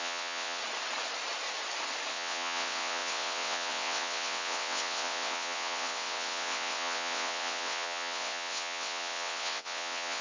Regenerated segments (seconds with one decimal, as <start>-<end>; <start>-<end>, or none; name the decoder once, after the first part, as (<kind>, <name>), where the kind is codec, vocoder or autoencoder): 0.0-0.6 (vocoder, WaveNeXt); 2.1-10.2